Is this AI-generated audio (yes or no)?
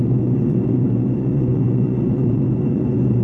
yes